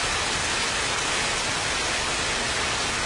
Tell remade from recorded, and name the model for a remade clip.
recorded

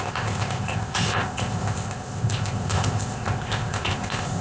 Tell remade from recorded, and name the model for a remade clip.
remade, codec, ZipCodec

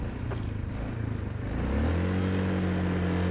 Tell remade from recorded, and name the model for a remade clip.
recorded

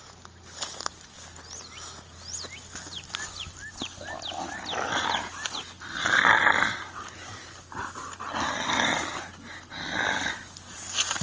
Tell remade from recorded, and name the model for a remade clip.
recorded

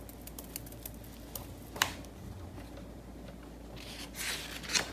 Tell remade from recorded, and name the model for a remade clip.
recorded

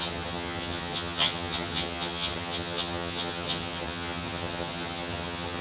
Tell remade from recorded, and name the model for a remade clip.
remade, vocoder, HiFi-GAN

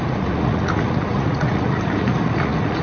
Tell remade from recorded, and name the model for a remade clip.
remade, vocoder, Vocos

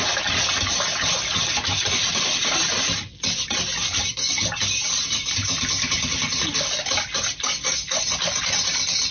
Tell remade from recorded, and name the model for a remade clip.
recorded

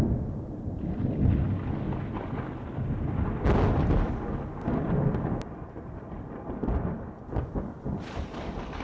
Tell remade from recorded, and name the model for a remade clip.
recorded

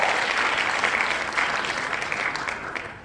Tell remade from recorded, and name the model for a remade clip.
recorded